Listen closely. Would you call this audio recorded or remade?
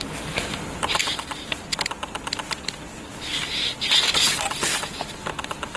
recorded